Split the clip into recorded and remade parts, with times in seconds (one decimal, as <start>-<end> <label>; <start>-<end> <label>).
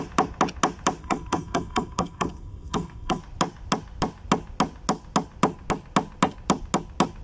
0.0-1.0 recorded; 1.0-3.2 remade; 3.2-7.2 recorded